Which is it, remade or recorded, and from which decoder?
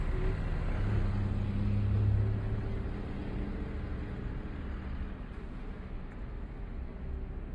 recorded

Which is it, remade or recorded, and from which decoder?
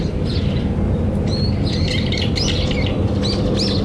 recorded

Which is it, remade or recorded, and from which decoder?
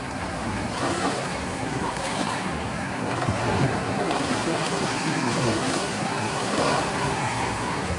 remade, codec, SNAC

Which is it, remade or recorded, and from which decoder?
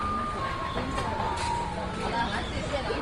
recorded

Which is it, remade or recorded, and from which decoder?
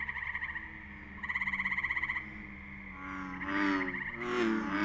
recorded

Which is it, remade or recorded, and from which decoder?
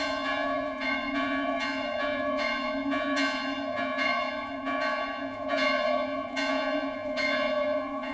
remade, vocoder, Vocos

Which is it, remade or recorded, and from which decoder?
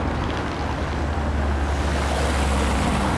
recorded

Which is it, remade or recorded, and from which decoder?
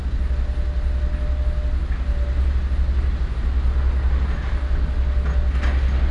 recorded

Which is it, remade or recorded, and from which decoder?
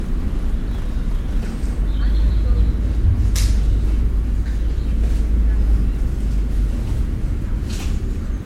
recorded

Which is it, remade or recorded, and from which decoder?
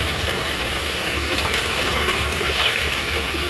remade, codec, DAC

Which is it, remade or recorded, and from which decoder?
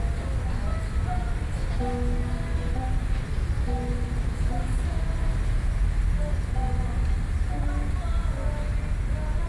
recorded